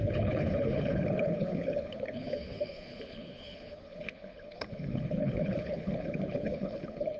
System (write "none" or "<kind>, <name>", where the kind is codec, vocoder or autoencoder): codec, HILCodec